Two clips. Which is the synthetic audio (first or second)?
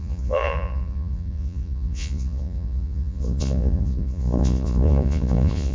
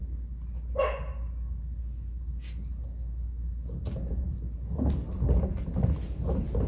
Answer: first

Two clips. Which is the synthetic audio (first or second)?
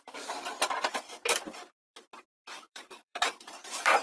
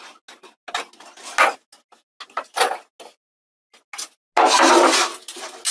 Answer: first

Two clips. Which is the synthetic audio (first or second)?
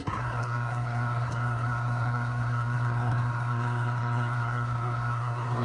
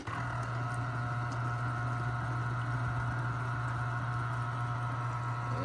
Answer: first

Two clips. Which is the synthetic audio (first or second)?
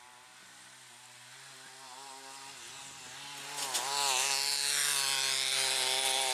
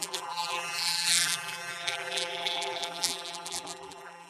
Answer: second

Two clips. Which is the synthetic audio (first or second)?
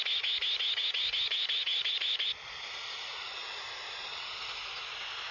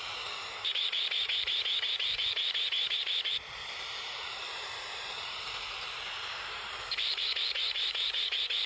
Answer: second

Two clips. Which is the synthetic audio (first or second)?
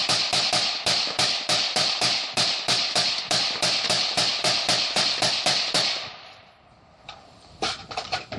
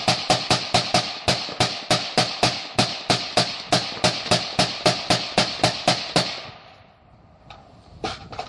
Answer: first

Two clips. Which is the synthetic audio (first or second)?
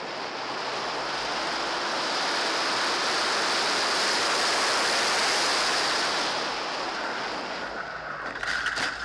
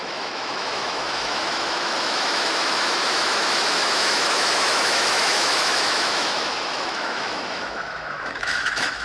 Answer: second